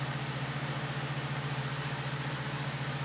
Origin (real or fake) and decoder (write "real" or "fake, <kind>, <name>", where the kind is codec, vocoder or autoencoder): real